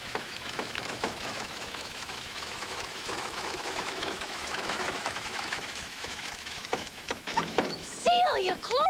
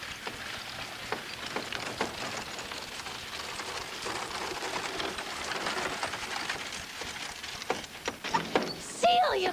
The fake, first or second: first